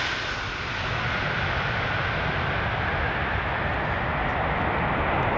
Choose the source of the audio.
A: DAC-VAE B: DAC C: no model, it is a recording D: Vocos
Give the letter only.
C